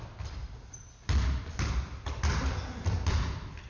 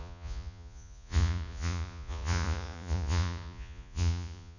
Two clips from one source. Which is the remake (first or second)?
second